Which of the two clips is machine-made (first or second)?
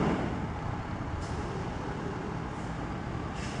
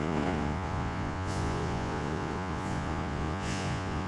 second